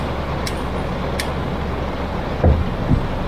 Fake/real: real